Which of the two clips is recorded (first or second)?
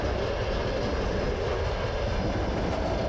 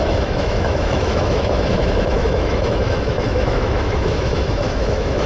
first